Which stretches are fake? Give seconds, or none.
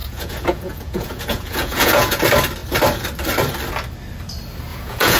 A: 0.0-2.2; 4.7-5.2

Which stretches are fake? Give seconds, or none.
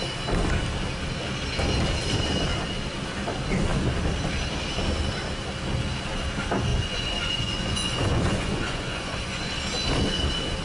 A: 6.7-9.5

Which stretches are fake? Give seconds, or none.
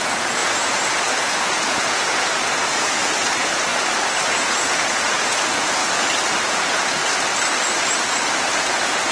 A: 0.0-3.7; 4.3-5.8; 6.5-7.0; 8.4-9.1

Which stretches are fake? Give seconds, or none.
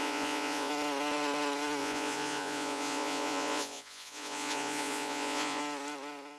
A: 0.0-0.7; 1.8-5.6